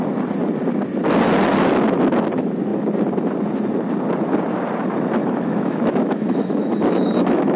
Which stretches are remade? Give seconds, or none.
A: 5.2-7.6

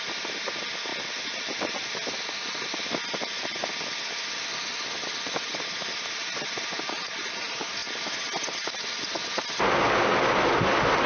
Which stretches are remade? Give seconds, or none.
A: none

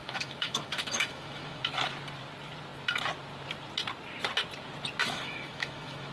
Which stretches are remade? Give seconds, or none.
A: 0.0-1.6; 5.0-6.1

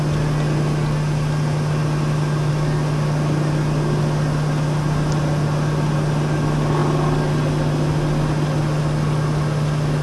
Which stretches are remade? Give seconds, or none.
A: none

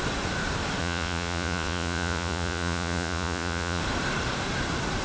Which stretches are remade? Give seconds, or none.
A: 0.8-3.8

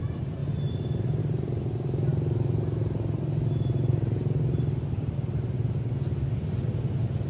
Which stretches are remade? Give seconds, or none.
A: none

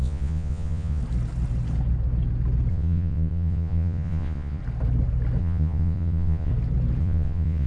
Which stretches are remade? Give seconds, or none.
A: 0.0-1.0; 2.7-4.6; 5.4-6.5; 7.0-7.7